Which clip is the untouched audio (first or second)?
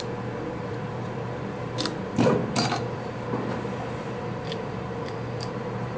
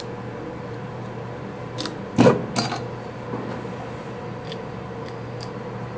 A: second